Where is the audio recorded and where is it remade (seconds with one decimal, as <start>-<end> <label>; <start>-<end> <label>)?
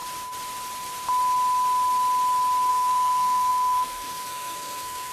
0.0-2.7 recorded; 2.7-5.1 remade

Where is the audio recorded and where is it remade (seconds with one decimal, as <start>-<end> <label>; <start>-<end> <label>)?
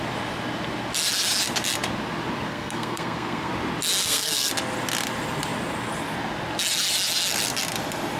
0.0-2.5 recorded; 2.5-3.5 remade; 3.5-4.0 recorded; 4.0-4.5 remade; 4.5-8.2 recorded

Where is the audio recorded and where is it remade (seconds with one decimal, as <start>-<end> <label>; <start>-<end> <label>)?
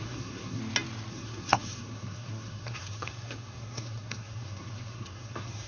0.0-0.6 remade; 0.6-1.1 recorded; 1.1-5.7 remade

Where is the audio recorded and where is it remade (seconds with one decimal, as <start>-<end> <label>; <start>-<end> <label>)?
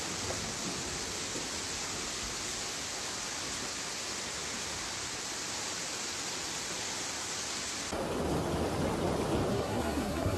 0.0-9.5 recorded; 9.5-10.4 remade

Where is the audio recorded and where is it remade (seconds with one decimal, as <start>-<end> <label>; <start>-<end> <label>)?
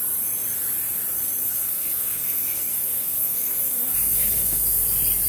0.0-1.4 recorded; 1.4-4.6 remade; 4.6-5.3 recorded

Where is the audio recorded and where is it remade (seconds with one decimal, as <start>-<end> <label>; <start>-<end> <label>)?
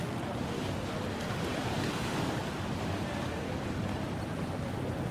0.0-5.1 recorded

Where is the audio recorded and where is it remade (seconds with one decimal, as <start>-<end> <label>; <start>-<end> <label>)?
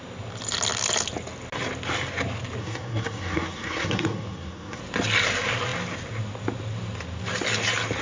0.0-2.6 recorded; 2.6-4.8 remade; 4.8-8.0 recorded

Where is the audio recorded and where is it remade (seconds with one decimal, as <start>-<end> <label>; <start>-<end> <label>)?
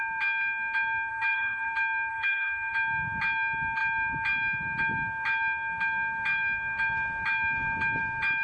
0.0-1.1 recorded; 1.1-1.7 remade; 1.7-2.1 recorded; 2.1-2.7 remade; 2.7-8.4 recorded